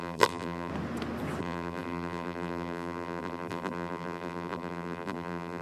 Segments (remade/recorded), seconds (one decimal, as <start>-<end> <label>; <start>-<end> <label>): 0.0-0.7 remade; 0.7-1.4 recorded; 1.4-5.6 remade